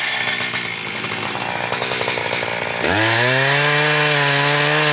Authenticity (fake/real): real